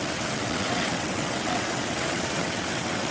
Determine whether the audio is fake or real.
fake